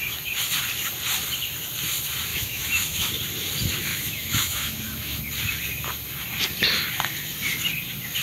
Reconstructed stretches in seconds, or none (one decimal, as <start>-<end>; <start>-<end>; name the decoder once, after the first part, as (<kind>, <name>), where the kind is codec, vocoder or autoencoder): 2.3-3.1 (autoencoder, DAC-VAE); 3.9-5.2